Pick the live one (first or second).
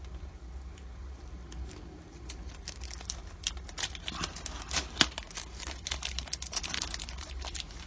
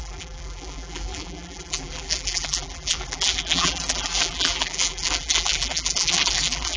first